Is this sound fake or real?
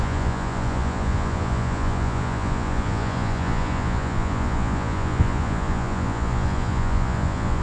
fake